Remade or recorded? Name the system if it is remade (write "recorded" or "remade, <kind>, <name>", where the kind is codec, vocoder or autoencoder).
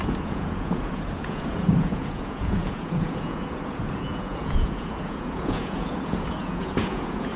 remade, vocoder, Vocos